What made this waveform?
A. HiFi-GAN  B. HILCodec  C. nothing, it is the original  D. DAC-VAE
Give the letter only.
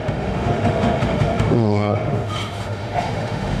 D